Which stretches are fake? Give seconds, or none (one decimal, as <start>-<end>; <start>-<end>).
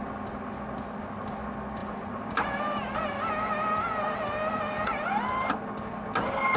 1.8-2.6